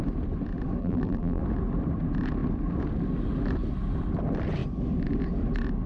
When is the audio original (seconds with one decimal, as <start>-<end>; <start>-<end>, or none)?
0.0-0.8; 1.4-5.9